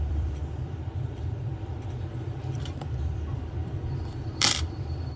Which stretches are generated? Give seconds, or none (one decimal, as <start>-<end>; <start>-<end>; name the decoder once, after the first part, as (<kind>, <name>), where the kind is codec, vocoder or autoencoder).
0.0-5.2 (vocoder, BigVGAN v2)